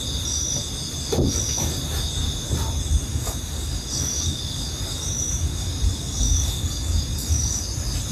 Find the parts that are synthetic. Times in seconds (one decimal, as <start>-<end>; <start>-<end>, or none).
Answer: 3.1-7.5